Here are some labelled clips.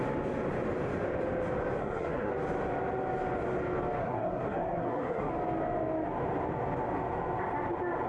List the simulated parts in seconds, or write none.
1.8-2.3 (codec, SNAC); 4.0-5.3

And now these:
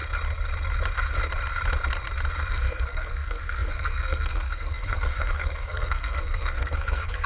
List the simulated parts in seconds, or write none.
2.5-7.3 (codec, SNAC)

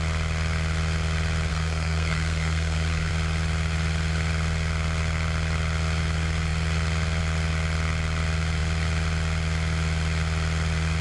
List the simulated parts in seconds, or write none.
1.5-3.1 (codec, SNAC)

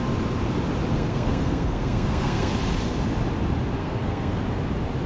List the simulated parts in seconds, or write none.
0.9-2.5 (codec, SNAC); 3.8-4.4